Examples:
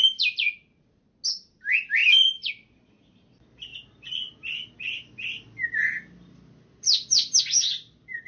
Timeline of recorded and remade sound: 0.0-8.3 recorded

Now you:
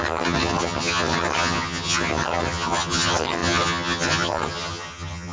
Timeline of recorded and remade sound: 0.0-5.3 remade

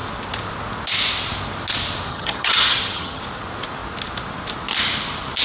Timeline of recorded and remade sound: 0.0-2.1 recorded; 2.1-3.2 remade; 3.2-5.4 recorded

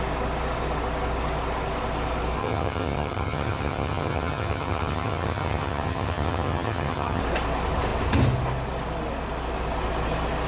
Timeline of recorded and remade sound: 0.0-2.4 recorded; 2.4-7.2 remade; 7.2-10.5 recorded

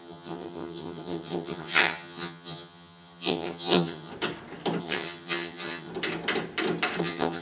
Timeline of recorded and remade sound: 0.0-4.1 remade; 4.1-4.8 recorded; 4.8-5.9 remade; 5.9-7.0 recorded; 7.0-7.4 remade

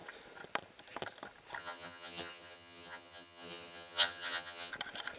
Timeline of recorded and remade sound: 0.0-1.6 recorded; 1.6-4.7 remade; 4.7-5.2 recorded

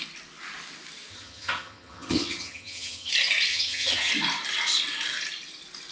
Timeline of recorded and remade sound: 0.0-1.1 recorded; 1.1-3.1 remade; 3.1-3.5 recorded; 3.5-4.1 remade; 4.1-5.9 recorded

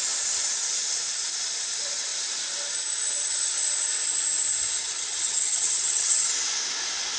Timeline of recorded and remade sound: 0.0-4.8 recorded; 4.8-6.3 remade; 6.3-7.2 recorded